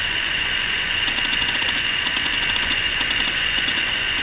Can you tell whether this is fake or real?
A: fake